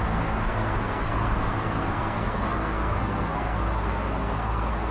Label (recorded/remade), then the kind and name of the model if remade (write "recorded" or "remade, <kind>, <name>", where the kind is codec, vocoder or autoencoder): remade, codec, SNAC